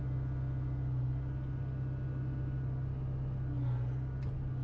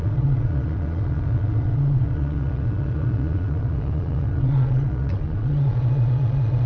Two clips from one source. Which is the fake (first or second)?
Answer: second